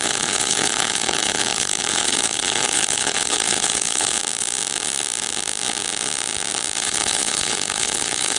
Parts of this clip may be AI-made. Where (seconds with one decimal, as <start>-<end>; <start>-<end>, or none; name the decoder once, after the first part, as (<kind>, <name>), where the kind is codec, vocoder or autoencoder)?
0.0-4.2 (codec, HILCodec); 6.8-8.4